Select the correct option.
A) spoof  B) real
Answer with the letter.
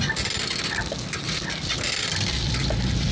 B